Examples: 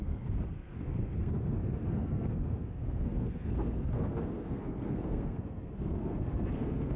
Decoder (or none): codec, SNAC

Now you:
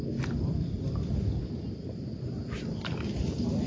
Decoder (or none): none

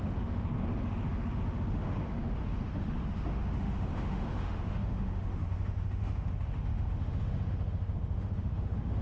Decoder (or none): autoencoder, DAC-VAE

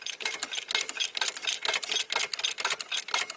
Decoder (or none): none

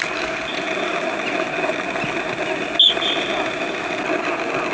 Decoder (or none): none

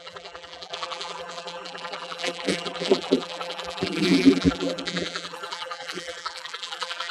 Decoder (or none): vocoder, BigVGAN v2